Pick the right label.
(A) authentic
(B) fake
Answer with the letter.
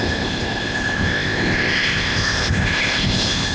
B